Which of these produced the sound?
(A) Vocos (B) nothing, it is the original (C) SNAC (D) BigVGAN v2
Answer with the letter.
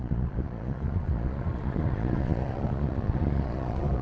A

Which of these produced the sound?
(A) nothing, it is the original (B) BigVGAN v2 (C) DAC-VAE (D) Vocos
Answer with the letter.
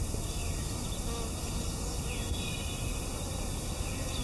A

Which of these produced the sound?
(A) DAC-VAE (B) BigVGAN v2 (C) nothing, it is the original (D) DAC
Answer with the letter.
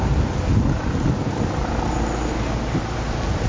C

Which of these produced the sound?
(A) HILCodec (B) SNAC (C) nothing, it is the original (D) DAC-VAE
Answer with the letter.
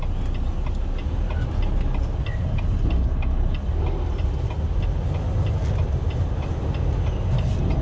C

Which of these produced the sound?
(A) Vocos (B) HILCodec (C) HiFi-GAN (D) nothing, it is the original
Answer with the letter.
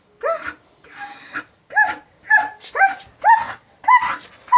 D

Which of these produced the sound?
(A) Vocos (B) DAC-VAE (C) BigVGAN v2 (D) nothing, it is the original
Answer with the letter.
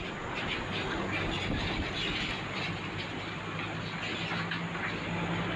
D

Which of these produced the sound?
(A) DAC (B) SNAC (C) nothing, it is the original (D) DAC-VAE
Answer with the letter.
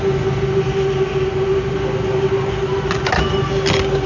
C